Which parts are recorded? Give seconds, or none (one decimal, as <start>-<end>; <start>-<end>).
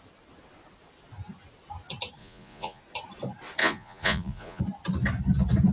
0.0-2.2; 2.8-3.6; 4.6-5.7